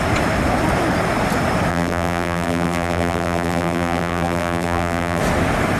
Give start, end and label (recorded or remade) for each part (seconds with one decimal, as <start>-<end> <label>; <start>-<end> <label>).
0.0-1.7 recorded; 1.7-5.2 remade; 5.2-5.8 recorded

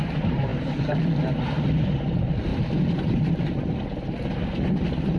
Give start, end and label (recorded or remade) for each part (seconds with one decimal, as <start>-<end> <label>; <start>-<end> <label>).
0.0-5.2 recorded

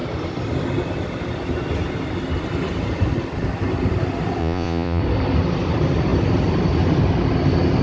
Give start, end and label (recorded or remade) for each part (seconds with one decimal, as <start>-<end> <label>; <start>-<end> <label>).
0.0-4.4 recorded; 4.4-5.0 remade; 5.0-7.8 recorded

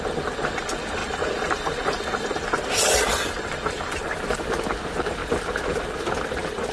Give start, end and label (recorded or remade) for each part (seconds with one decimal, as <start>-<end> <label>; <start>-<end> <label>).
0.0-1.0 recorded; 1.0-4.4 remade; 4.4-6.7 recorded

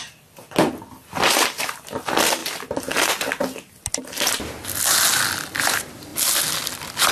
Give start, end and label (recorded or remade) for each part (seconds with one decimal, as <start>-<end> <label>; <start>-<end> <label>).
0.0-7.1 recorded

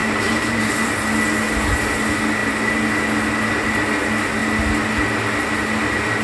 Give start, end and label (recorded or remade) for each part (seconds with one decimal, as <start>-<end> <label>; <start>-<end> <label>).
0.0-0.9 remade; 0.9-6.2 recorded

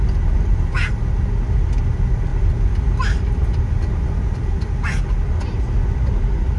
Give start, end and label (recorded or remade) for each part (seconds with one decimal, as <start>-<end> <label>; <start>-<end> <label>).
0.0-6.6 recorded

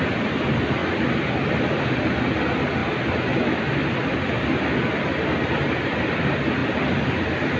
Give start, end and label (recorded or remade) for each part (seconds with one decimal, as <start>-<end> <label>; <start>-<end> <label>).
0.0-7.6 recorded